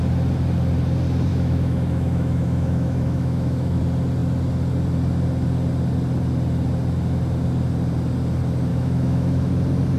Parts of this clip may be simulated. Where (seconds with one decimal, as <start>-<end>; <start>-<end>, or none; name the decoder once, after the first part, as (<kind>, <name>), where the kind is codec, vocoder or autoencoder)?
1.3-3.8 (autoencoder, DAC-VAE); 8.7-9.5